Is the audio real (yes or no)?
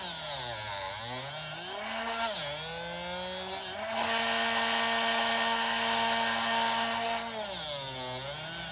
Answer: yes